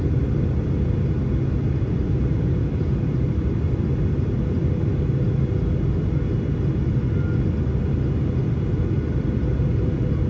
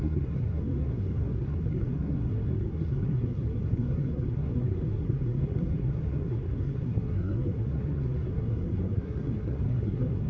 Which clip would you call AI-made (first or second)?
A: second